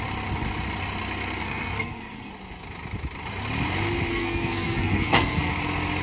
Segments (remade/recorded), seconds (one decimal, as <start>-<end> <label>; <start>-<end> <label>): 0.0-1.4 recorded; 1.4-2.3 remade; 2.3-4.1 recorded; 4.1-5.5 remade; 5.5-6.0 recorded